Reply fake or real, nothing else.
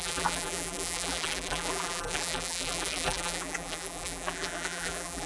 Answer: fake